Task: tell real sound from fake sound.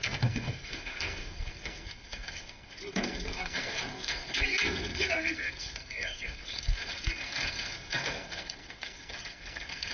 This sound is fake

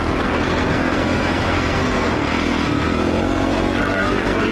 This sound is fake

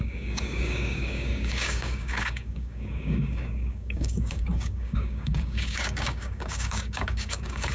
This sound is fake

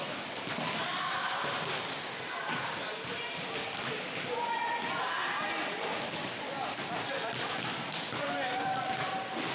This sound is real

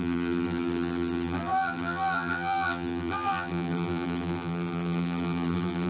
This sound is fake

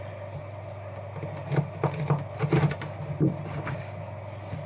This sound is real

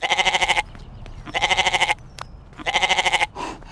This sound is real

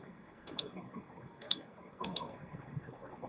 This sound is fake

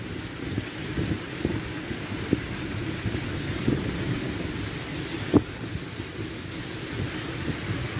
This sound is real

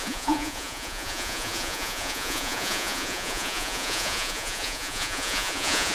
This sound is fake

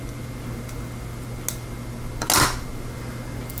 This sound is real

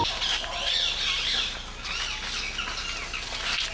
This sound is real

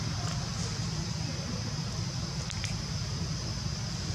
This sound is real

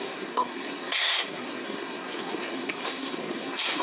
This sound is fake